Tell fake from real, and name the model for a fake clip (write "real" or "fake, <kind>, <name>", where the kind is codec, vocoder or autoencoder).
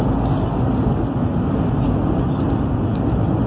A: real